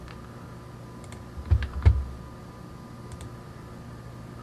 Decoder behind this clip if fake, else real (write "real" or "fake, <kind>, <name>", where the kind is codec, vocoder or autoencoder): real